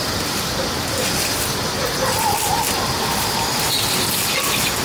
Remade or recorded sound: recorded